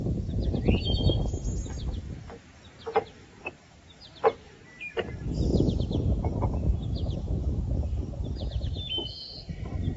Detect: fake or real real